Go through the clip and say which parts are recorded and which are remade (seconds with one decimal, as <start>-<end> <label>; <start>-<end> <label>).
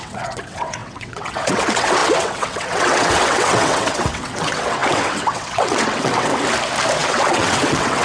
0.0-6.3 remade; 6.3-7.0 recorded; 7.0-8.0 remade